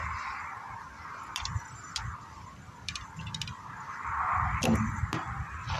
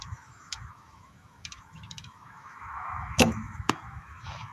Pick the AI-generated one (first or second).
second